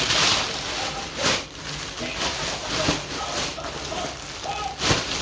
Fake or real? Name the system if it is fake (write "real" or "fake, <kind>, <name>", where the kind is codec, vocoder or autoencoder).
real